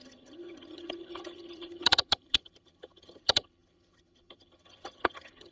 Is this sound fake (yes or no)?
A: yes